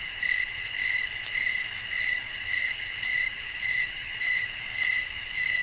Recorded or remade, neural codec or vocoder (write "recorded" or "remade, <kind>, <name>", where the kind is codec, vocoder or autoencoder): remade, autoencoder, DAC-VAE